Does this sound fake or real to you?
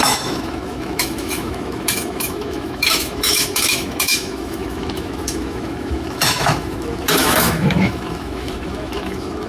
fake